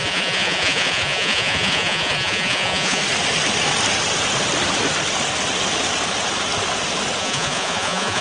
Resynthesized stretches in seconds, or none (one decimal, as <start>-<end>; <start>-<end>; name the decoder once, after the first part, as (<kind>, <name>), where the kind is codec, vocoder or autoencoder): 0.0-3.0 (vocoder, Vocos); 7.2-8.2